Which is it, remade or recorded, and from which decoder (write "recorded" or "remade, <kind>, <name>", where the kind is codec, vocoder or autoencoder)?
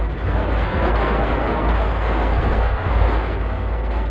remade, codec, SNAC